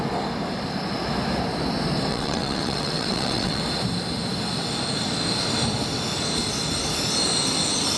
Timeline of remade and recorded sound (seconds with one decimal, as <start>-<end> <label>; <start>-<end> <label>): 0.0-2.1 recorded; 2.1-3.6 remade; 3.6-8.0 recorded